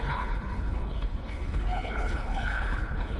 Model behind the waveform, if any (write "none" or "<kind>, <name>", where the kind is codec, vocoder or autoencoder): codec, HILCodec